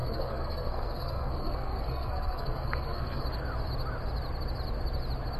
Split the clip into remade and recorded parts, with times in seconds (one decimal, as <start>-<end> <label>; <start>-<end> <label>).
0.0-3.2 remade; 3.2-5.4 recorded